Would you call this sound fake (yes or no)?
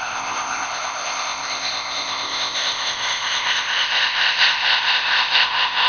yes